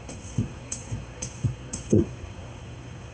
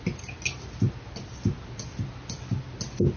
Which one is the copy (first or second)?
first